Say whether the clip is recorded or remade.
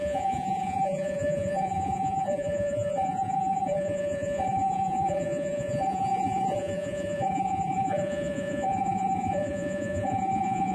remade